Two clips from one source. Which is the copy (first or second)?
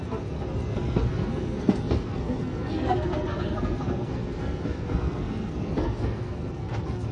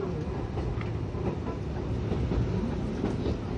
first